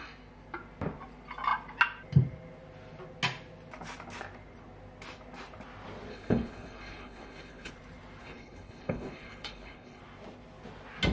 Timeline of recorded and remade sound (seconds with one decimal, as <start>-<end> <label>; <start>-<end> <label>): 0.0-6.1 recorded; 6.1-7.7 remade; 7.7-8.2 recorded; 8.2-10.0 remade; 10.0-11.1 recorded